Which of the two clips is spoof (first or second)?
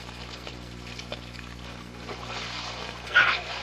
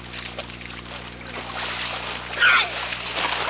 first